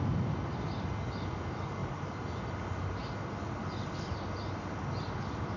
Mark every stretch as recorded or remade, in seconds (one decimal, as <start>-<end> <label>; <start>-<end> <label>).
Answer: 0.0-1.8 recorded; 1.8-2.4 remade; 2.4-5.6 recorded